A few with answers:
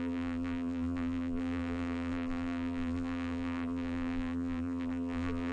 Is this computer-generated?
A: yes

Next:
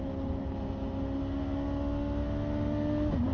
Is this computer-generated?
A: no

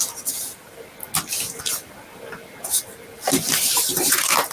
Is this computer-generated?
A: no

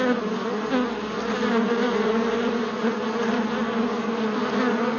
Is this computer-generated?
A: no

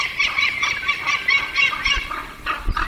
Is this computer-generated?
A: yes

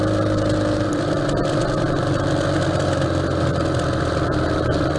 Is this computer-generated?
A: no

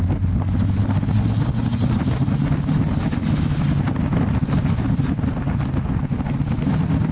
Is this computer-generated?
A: no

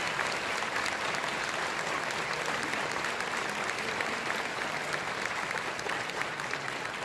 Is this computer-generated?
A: yes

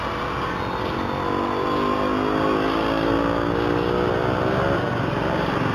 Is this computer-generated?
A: no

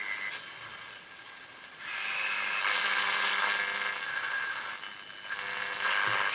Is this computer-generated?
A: no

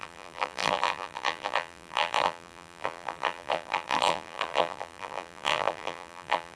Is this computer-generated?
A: yes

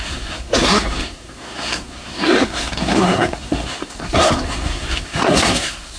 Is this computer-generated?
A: yes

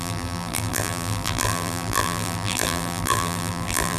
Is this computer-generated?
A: yes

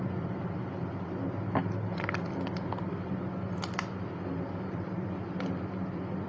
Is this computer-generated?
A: no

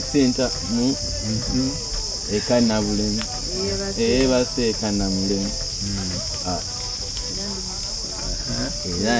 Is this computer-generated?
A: no